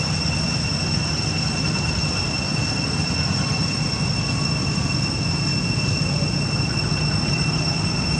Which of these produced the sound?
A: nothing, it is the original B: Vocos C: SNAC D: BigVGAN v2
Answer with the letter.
A